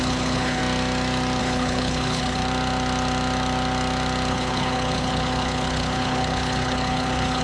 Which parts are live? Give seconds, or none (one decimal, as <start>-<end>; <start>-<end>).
0.6-1.4; 2.4-4.3